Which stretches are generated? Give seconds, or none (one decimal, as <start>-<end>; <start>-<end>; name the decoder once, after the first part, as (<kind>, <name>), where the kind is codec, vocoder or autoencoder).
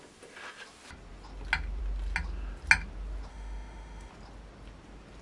3.3-4.1 (autoencoder, DAC-VAE)